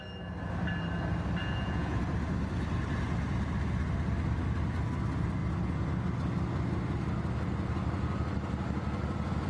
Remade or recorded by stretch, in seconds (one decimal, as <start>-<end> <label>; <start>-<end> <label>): 0.0-1.4 recorded; 1.4-2.0 remade; 2.0-9.5 recorded